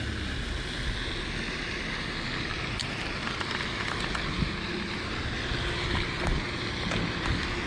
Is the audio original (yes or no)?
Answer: yes